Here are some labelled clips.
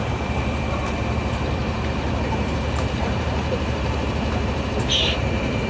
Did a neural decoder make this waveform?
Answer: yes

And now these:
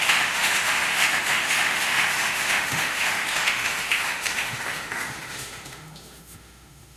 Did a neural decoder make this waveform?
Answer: yes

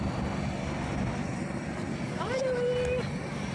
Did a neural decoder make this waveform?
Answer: no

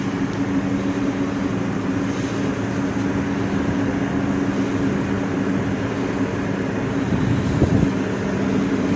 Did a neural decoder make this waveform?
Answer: no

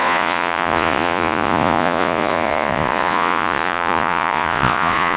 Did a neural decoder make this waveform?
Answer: yes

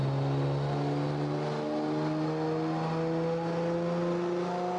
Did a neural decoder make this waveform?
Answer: no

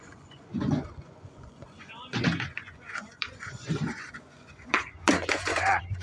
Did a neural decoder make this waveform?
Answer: yes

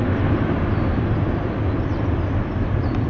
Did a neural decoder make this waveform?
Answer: no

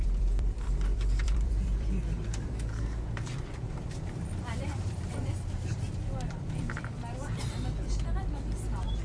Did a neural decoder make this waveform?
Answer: yes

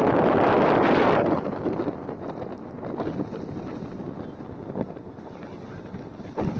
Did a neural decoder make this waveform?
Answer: no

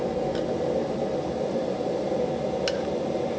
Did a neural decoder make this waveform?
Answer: no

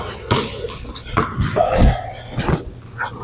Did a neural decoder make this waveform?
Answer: no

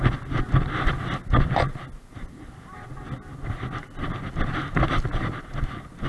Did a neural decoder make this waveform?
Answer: no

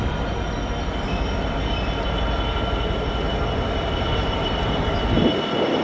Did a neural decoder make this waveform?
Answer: no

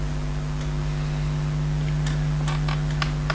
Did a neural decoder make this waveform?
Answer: no